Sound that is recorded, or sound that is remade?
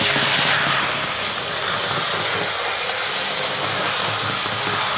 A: recorded